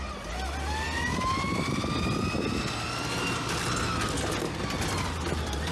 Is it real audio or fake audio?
real